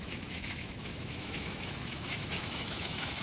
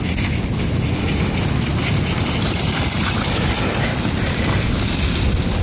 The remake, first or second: first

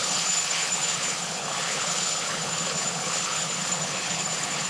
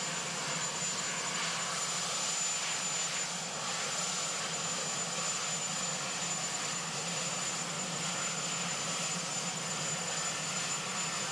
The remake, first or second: first